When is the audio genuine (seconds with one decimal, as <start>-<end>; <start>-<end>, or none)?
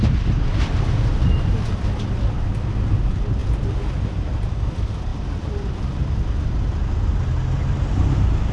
0.0-8.5